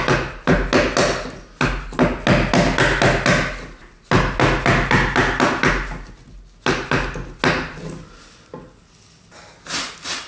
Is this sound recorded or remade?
recorded